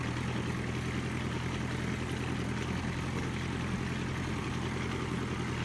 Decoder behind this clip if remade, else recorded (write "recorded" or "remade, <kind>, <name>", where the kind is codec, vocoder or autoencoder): recorded